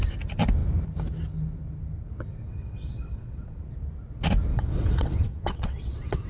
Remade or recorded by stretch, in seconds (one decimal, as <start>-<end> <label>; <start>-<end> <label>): 0.0-2.5 recorded; 2.5-3.6 remade; 3.6-4.5 recorded; 4.5-6.3 remade

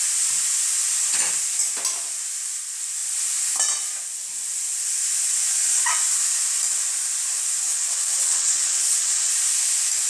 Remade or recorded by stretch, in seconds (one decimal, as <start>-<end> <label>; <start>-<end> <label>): 0.0-7.7 recorded; 7.7-9.3 remade; 9.3-10.1 recorded

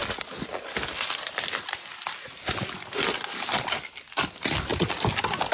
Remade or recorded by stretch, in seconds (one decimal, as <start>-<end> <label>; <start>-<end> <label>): 0.0-5.5 recorded